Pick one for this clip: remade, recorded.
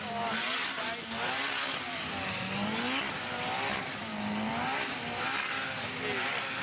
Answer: recorded